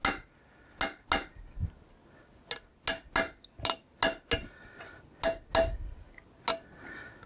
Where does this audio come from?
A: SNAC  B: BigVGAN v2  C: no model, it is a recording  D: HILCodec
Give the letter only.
C